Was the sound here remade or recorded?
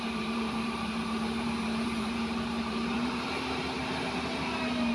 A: remade